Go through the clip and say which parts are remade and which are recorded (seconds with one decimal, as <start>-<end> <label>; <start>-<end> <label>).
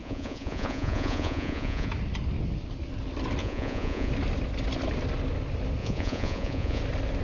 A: 0.0-1.9 remade; 1.9-3.4 recorded; 3.4-4.1 remade; 4.1-5.8 recorded; 5.8-6.8 remade; 6.8-7.2 recorded